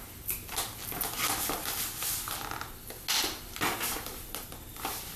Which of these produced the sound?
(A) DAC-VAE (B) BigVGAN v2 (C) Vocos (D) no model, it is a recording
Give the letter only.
D